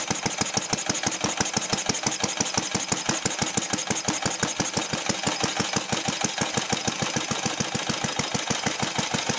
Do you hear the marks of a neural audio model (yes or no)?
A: no